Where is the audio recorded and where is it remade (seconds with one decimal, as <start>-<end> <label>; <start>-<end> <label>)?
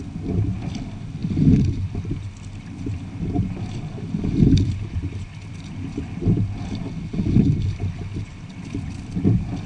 0.0-9.7 recorded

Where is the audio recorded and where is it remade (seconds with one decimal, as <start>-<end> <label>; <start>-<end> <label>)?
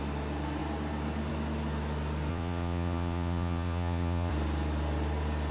0.0-2.3 recorded; 2.3-4.3 remade; 4.3-5.5 recorded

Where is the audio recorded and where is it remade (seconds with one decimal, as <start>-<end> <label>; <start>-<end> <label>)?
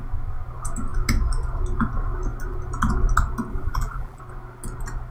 0.0-3.5 recorded; 3.5-4.2 remade; 4.2-5.1 recorded